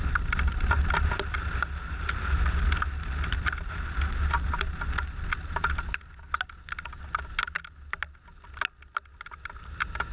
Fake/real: real